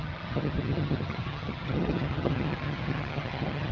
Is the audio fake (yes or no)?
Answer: yes